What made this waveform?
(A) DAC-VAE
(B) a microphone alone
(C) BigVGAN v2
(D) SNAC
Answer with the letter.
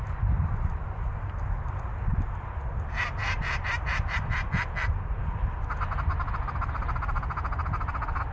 B